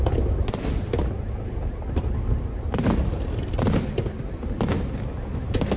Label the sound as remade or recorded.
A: recorded